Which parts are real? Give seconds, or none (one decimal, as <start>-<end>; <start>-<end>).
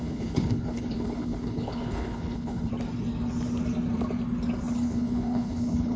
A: 2.7-4.7